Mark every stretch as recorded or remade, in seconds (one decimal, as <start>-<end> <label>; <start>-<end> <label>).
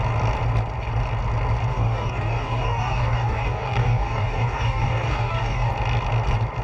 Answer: 0.0-1.7 recorded; 1.7-5.7 remade; 5.7-6.6 recorded